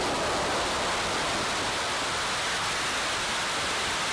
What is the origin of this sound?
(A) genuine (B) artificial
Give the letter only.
A